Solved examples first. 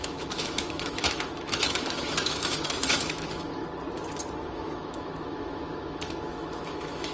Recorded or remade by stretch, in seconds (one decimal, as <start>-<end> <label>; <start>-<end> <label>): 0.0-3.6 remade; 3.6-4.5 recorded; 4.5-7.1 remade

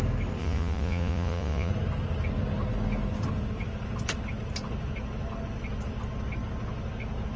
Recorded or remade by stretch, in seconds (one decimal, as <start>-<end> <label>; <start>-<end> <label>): 0.0-0.4 recorded; 0.4-1.7 remade; 1.7-7.4 recorded

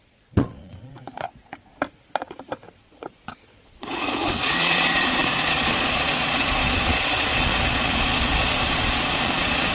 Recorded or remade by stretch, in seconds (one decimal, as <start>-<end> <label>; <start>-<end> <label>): 0.0-1.7 remade; 1.7-2.8 recorded; 2.8-9.7 remade